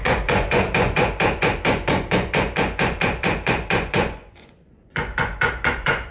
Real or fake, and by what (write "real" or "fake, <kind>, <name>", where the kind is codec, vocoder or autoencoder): fake, vocoder, Vocos